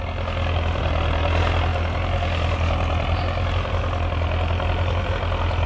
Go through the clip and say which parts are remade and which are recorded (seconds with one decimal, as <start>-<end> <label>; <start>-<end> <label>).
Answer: 0.0-5.7 recorded